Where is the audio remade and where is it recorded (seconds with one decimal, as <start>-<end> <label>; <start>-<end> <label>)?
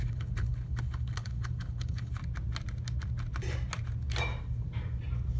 0.0-2.2 remade; 2.2-5.4 recorded